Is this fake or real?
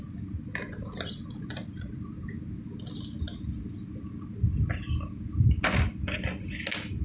real